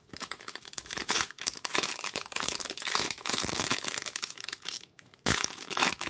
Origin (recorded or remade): remade